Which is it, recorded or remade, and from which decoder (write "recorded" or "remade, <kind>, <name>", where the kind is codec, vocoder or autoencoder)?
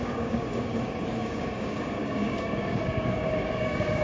remade, codec, DAC